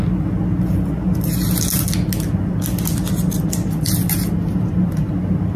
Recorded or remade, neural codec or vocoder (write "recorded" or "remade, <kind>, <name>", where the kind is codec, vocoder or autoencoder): recorded